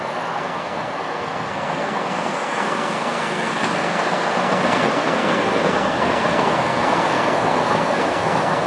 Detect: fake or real fake